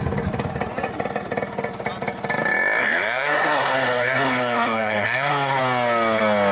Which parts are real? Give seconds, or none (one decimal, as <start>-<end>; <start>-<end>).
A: 0.0-2.8; 5.6-6.5